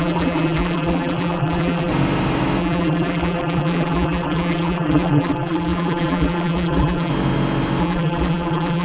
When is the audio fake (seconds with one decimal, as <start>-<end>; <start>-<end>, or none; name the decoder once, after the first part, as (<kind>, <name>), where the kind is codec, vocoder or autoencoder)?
0.0-1.9 (vocoder, BigVGAN v2); 2.6-7.1; 7.8-8.8

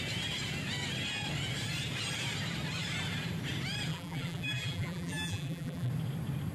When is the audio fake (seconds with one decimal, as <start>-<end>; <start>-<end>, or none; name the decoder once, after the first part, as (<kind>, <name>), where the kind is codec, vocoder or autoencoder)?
3.9-5.9 (vocoder, BigVGAN v2)

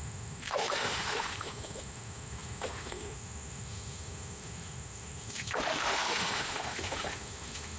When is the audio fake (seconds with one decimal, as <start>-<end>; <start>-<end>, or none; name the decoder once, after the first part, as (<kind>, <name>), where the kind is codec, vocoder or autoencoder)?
0.0-7.8 (autoencoder, DAC-VAE)

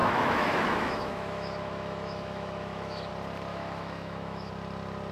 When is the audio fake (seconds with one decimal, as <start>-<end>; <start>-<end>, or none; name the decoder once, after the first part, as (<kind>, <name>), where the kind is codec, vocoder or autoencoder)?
0.0-3.1 (autoencoder, DAC-VAE); 3.5-4.5

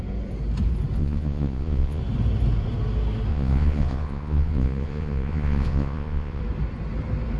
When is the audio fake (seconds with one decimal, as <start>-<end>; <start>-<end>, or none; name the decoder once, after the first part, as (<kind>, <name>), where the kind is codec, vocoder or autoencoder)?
1.0-2.0 (vocoder, Vocos); 3.3-6.4

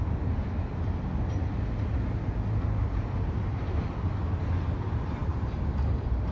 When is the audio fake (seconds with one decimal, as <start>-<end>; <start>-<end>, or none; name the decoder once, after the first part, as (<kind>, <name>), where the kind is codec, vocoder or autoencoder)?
none

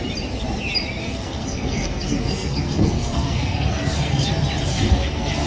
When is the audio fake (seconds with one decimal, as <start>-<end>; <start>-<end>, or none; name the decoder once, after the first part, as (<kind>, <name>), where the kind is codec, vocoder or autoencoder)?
1.0-4.3 (codec, SNAC); 4.7-5.5